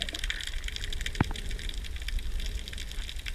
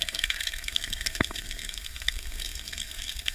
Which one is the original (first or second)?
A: first